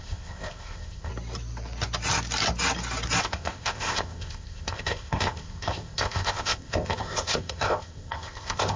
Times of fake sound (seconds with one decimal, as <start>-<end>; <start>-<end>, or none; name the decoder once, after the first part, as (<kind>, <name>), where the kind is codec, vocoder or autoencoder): 0.0-1.1 (codec, ZipCodec); 3.2-8.8